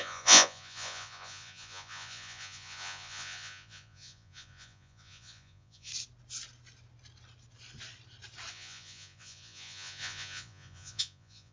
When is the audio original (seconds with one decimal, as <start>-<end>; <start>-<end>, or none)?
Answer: 5.9-8.5